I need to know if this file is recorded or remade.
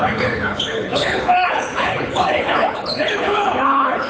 remade